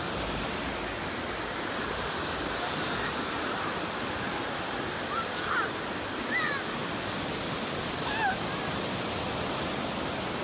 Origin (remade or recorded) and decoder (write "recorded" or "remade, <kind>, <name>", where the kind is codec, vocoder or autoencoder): recorded